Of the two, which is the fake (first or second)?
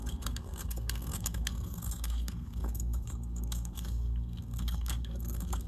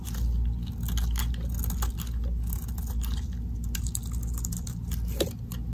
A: first